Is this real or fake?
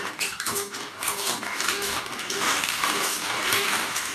fake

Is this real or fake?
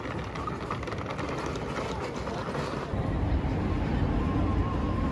real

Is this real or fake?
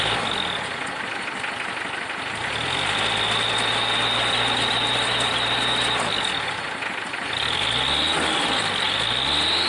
real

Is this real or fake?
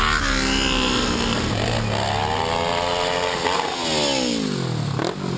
real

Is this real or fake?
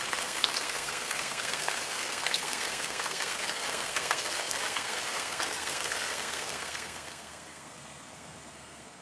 fake